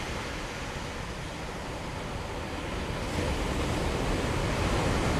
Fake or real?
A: real